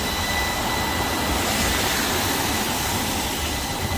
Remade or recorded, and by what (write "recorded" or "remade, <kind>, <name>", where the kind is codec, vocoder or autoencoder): recorded